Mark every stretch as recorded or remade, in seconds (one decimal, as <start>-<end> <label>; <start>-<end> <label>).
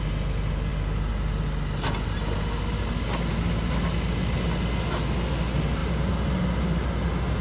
0.0-7.4 recorded